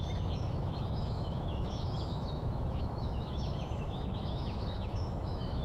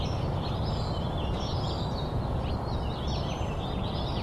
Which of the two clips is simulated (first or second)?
first